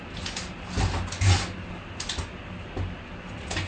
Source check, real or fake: real